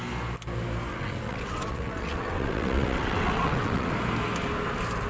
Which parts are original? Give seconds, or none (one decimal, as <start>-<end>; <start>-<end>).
0.0-0.9; 3.9-5.1